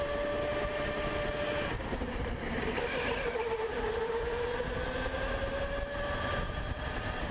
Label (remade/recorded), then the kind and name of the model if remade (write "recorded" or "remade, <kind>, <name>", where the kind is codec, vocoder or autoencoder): recorded